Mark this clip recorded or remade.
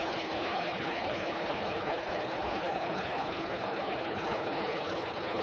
remade